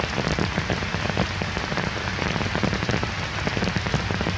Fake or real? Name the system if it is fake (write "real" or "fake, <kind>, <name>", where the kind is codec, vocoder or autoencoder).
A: real